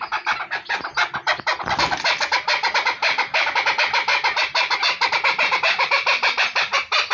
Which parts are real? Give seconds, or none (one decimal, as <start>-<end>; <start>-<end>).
0.0-7.1